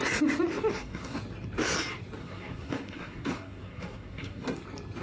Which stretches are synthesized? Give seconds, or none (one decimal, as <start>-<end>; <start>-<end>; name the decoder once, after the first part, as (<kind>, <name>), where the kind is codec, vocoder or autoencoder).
0.7-1.2 (codec, SNAC); 2.2-4.6